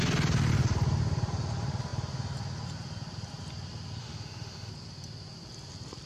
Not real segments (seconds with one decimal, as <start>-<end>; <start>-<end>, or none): 4.0-4.7